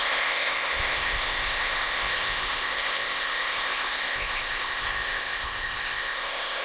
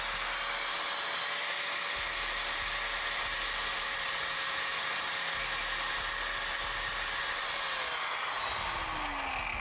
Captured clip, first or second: second